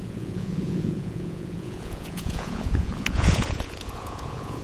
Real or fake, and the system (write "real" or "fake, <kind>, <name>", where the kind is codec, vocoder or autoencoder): fake, vocoder, Vocos